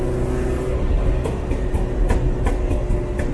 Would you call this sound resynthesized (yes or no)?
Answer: no